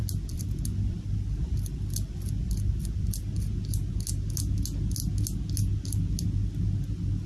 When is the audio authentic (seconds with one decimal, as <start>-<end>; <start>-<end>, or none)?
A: 3.3-7.3